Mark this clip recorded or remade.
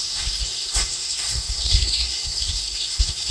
remade